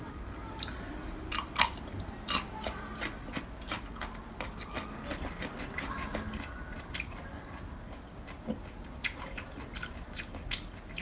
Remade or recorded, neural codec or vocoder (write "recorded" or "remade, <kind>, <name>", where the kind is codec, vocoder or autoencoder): recorded